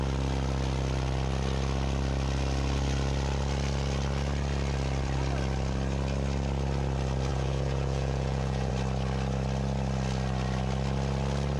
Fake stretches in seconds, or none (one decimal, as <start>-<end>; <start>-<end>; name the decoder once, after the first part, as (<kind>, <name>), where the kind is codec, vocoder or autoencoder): 7.3-8.7 (vocoder, Vocos)